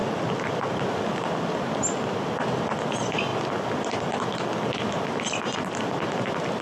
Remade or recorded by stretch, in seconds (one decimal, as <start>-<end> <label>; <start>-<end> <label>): 0.0-6.6 recorded

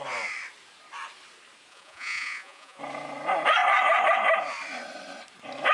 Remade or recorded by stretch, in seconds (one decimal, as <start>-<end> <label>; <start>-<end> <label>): 0.0-1.7 recorded; 1.7-2.8 remade; 2.8-5.7 recorded